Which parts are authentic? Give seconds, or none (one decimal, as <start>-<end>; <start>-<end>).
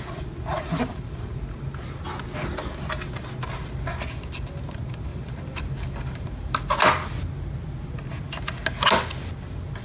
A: 0.0-0.5; 1.3-5.1; 6.7-9.8